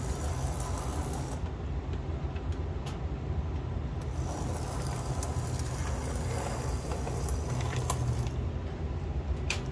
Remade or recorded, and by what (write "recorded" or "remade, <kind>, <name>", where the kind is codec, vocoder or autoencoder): recorded